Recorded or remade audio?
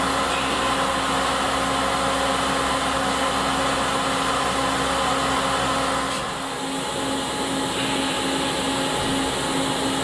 recorded